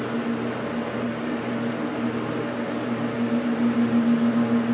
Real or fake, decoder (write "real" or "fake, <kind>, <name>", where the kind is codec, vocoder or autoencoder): real